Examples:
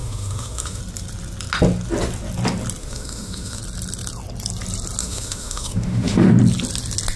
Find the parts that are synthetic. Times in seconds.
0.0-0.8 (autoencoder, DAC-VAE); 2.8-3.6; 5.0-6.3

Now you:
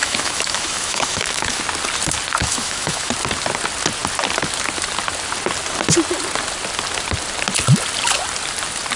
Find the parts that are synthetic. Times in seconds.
0.0-1.6 (autoencoder, DAC-VAE); 2.4-3.1